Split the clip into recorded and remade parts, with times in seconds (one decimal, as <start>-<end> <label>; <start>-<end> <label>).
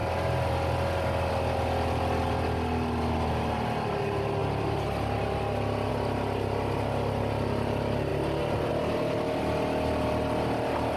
0.0-11.0 recorded